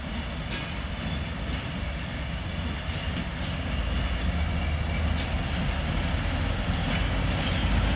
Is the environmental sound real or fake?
real